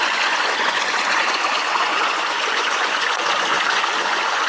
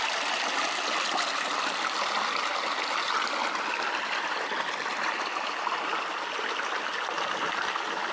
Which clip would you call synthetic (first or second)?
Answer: first